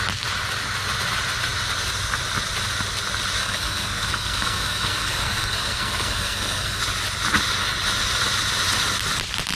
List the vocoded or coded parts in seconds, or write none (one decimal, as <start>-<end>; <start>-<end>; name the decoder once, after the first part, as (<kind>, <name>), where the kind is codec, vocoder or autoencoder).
3.4-6.8 (codec, SNAC)